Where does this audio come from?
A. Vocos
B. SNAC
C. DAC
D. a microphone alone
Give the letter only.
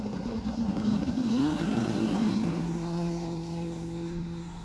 B